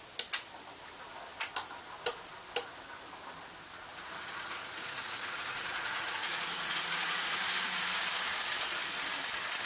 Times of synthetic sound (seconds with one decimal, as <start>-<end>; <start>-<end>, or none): 3.9-7.4